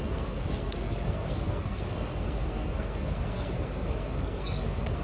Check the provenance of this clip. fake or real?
fake